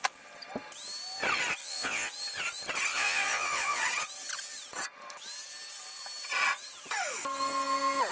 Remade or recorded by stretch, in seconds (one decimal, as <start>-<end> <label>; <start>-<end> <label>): 0.0-1.6 recorded; 1.6-2.1 remade; 2.1-2.9 recorded; 2.9-3.8 remade; 3.8-8.1 recorded